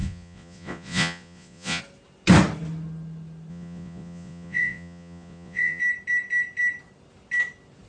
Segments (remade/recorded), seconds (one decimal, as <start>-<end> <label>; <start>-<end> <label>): 0.0-1.8 remade; 1.8-3.5 recorded; 3.5-5.8 remade; 5.8-7.9 recorded